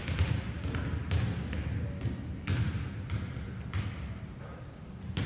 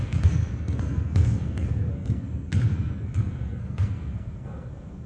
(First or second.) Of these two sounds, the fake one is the second